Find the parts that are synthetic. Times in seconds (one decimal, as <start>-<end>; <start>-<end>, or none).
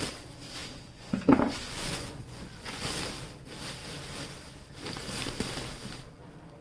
0.6-2.9